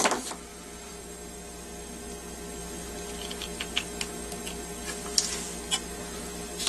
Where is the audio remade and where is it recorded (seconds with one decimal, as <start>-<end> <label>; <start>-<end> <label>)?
0.0-0.5 recorded; 0.5-1.4 remade; 1.4-6.7 recorded